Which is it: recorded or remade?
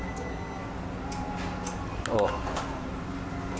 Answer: recorded